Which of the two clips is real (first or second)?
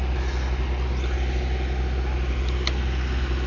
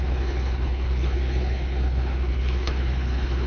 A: first